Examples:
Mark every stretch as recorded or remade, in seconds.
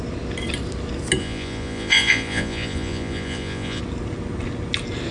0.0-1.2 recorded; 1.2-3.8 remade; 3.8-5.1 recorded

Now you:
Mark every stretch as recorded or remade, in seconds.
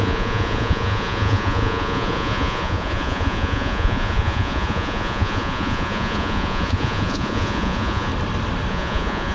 0.0-8.1 remade; 8.1-8.7 recorded; 8.7-9.3 remade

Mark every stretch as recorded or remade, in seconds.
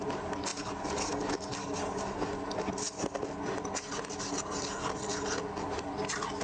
0.0-6.4 recorded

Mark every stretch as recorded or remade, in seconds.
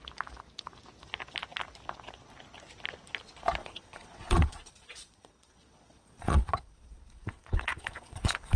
0.0-3.6 recorded; 3.6-8.6 remade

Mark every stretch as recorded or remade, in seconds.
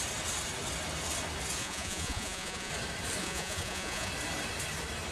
0.0-1.6 recorded; 1.6-2.7 remade; 2.7-3.2 recorded; 3.2-4.1 remade; 4.1-5.1 recorded